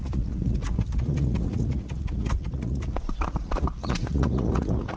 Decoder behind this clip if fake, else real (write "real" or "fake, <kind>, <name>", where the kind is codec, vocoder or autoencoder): fake, vocoder, Vocos